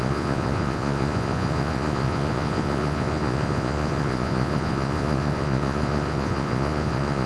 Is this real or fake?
fake